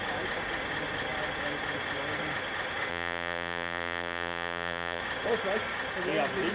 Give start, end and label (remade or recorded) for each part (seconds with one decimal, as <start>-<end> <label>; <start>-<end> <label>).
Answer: 0.0-2.9 recorded; 2.9-5.0 remade; 5.0-6.5 recorded